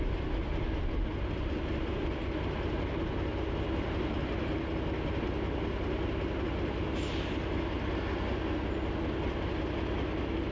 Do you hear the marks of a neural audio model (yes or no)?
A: no